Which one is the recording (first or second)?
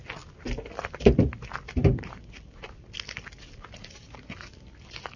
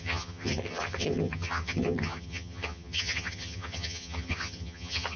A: first